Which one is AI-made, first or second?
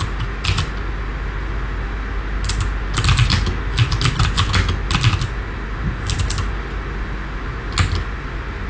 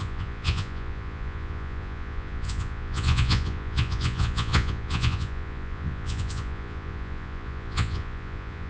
second